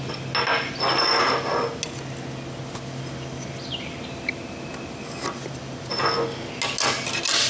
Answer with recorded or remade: recorded